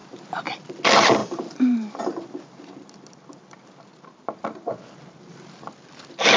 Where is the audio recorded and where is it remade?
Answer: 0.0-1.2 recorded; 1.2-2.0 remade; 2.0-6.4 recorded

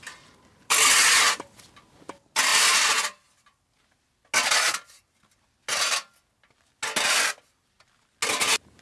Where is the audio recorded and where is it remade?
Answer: 0.0-8.8 recorded

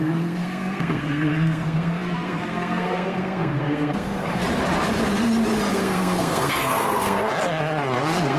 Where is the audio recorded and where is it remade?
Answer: 0.0-4.4 remade; 4.4-5.7 recorded; 5.7-7.3 remade; 7.3-8.0 recorded; 8.0-8.4 remade

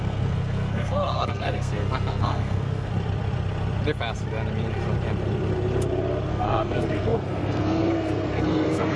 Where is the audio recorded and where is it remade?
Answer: 0.0-2.9 remade; 2.9-6.3 recorded; 6.3-9.0 remade

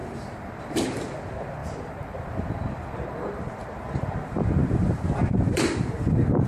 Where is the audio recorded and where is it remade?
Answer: 0.0-6.5 remade

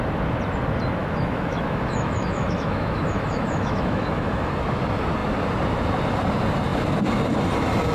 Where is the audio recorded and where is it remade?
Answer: 0.0-1.0 recorded; 1.0-4.5 remade; 4.5-7.9 recorded

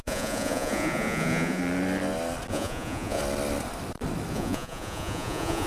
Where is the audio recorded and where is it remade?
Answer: 0.0-1.6 remade; 1.6-2.5 recorded; 2.5-3.2 remade; 3.2-4.3 recorded; 4.3-5.7 remade